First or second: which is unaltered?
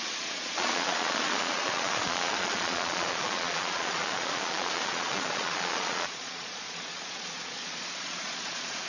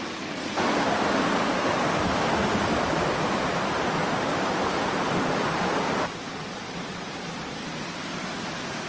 second